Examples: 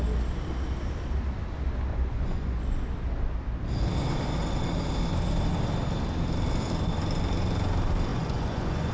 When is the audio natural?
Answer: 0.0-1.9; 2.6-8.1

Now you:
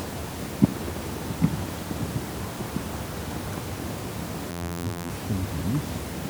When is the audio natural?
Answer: 0.0-4.5; 5.1-6.3

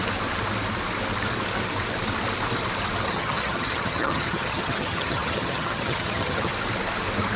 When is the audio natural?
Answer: 0.0-3.1; 6.5-7.4